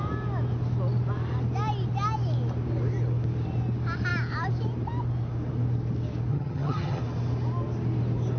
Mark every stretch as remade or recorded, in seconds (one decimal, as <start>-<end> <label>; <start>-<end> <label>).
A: 0.0-6.3 recorded; 6.3-7.0 remade; 7.0-8.4 recorded